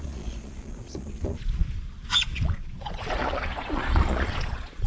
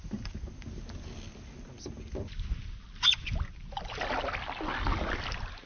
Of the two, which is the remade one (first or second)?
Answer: first